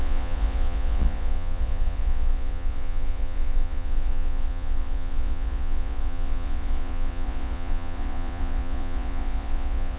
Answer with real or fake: fake